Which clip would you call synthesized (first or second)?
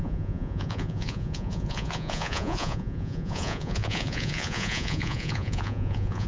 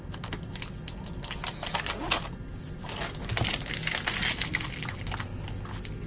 first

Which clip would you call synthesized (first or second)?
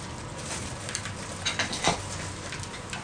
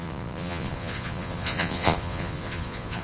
second